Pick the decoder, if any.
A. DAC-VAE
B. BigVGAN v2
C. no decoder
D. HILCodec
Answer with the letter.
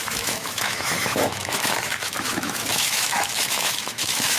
A